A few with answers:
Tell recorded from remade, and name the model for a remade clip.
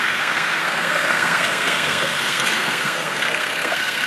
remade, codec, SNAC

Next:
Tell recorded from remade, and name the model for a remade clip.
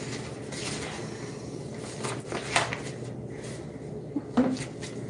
recorded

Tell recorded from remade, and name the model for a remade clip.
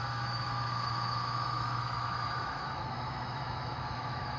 remade, autoencoder, DAC-VAE